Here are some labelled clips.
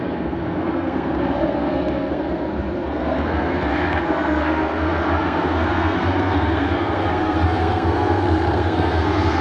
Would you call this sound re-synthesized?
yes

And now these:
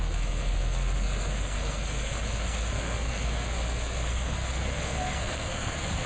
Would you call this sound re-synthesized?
yes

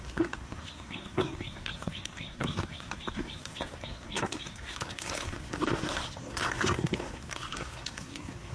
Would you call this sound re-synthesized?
yes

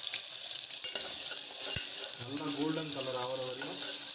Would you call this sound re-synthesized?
no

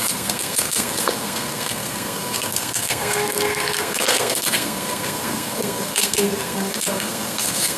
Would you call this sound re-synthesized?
yes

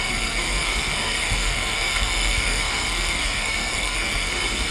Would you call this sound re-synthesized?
yes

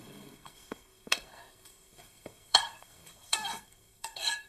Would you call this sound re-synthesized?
yes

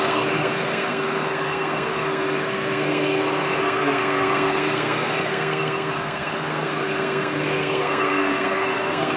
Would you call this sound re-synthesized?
yes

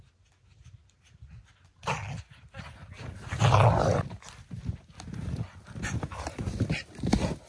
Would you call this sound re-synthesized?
no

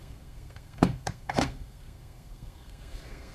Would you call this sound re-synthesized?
yes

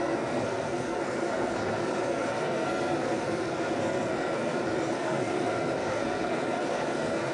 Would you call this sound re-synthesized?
yes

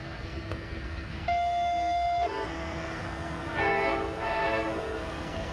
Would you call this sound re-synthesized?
yes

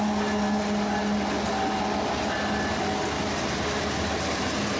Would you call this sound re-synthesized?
no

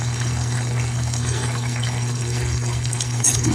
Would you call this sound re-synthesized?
yes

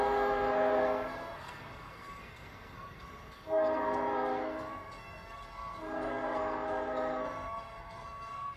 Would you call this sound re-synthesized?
yes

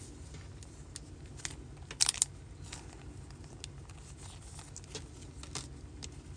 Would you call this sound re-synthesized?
no